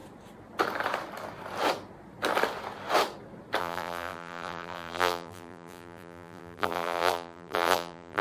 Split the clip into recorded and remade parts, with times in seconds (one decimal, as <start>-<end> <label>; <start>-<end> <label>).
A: 0.0-3.6 recorded; 3.6-8.2 remade